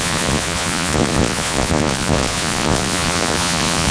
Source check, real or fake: fake